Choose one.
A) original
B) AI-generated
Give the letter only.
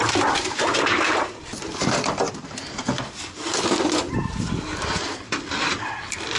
B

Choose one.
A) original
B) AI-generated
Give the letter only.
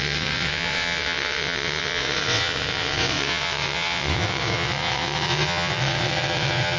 B